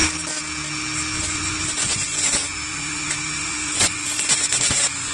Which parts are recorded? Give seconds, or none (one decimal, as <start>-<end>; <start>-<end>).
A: 0.0-1.2